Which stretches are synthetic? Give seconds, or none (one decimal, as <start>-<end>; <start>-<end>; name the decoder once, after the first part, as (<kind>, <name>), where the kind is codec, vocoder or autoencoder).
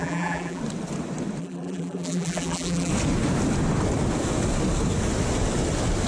0.0-0.6 (vocoder, BigVGAN v2); 1.4-2.9